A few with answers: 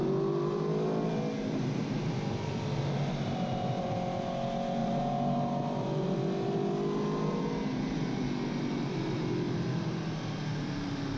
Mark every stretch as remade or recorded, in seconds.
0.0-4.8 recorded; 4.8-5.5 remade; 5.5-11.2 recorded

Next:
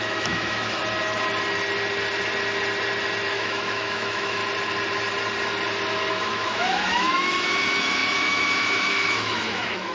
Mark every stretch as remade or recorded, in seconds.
0.0-0.8 remade; 0.8-3.3 recorded; 3.3-4.4 remade; 4.4-6.1 recorded; 6.1-9.9 remade

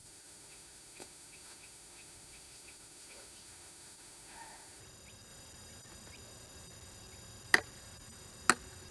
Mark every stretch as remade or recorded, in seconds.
0.0-4.8 remade; 4.8-8.9 recorded

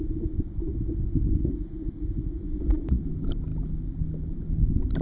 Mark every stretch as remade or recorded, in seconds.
0.0-1.4 recorded; 1.4-3.0 remade; 3.0-5.0 recorded

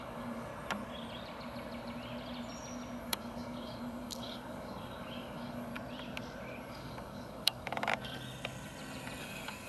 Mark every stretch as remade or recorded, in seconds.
0.0-0.5 remade; 0.5-3.0 recorded; 3.0-5.7 remade; 5.7-6.7 recorded; 6.7-7.9 remade; 7.9-9.2 recorded; 9.2-9.7 remade

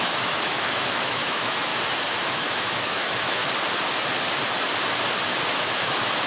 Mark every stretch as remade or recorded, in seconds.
0.0-1.7 remade; 1.7-2.3 recorded; 2.3-3.4 remade; 3.4-5.5 recorded; 5.5-6.3 remade

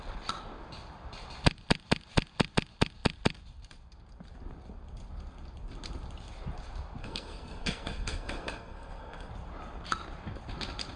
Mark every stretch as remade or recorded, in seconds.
0.0-7.0 recorded; 7.0-9.3 remade; 9.3-11.0 recorded

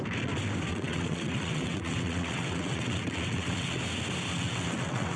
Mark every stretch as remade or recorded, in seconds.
0.0-0.7 recorded; 0.7-3.8 remade; 3.8-4.3 recorded; 4.3-5.2 remade